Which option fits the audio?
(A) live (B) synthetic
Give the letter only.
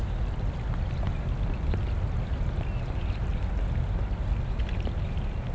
A